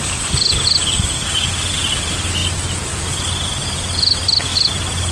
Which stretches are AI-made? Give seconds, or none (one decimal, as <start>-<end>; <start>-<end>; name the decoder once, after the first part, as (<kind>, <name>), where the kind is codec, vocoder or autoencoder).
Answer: none